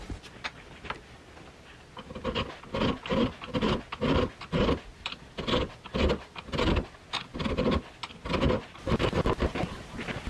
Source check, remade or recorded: recorded